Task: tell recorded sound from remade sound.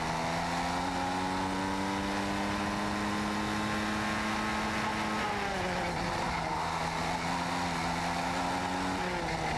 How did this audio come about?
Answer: recorded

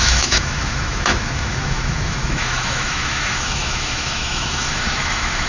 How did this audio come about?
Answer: remade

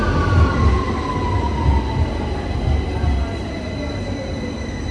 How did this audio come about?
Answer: recorded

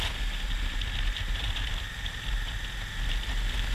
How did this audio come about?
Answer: recorded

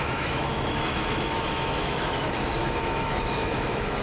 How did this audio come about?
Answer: remade